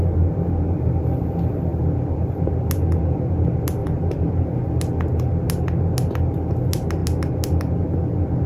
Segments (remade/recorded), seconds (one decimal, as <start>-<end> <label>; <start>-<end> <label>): 0.0-3.8 recorded; 3.8-4.3 remade; 4.3-8.5 recorded